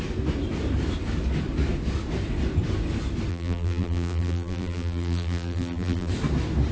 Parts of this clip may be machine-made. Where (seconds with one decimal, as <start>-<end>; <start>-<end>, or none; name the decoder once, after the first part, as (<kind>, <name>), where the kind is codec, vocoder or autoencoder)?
3.3-6.1 (vocoder, BigVGAN v2)